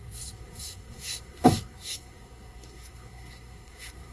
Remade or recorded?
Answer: remade